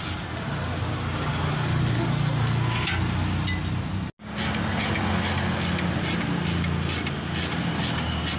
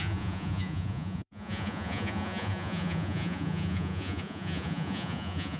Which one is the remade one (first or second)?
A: second